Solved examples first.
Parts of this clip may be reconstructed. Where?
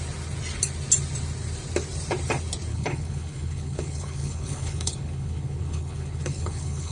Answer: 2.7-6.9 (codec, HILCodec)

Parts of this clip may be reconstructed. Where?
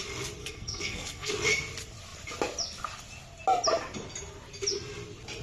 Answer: 0.4-1.3 (codec, SNAC)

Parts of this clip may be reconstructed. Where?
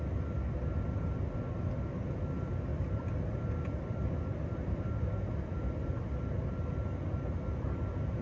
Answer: 2.7-5.7 (vocoder, BigVGAN v2)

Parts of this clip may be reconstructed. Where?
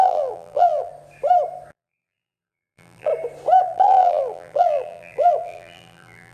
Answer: 0.0-0.9 (vocoder, BigVGAN v2); 1.7-3.1; 3.6-6.3